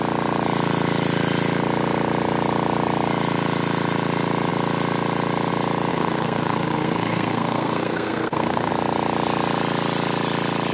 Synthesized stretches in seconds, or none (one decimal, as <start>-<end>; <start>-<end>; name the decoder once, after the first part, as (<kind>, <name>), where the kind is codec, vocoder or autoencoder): 5.9-8.7 (codec, SNAC)